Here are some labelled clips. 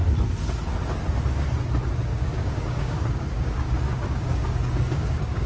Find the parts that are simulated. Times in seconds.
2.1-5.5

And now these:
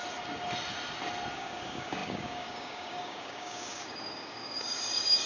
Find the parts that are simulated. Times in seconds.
1.3-5.3

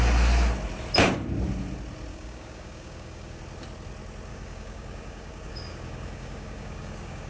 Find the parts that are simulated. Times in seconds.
2.1-3.4; 4.3-7.3